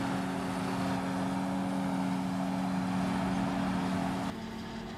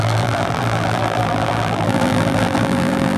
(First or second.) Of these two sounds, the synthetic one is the second